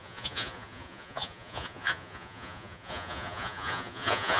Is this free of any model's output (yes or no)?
no